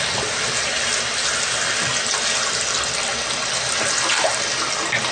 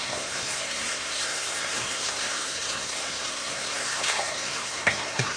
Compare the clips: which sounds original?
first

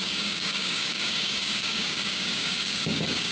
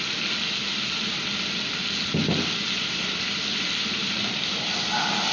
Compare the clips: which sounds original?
second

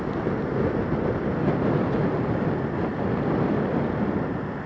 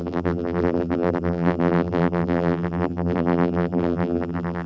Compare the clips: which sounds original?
first